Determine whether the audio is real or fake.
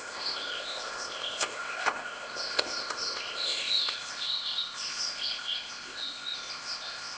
fake